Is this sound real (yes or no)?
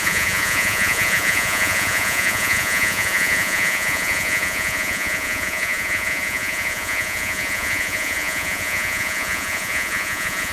no